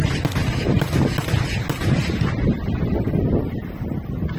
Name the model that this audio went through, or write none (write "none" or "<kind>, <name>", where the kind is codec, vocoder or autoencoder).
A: none